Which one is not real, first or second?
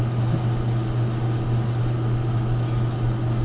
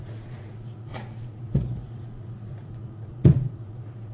second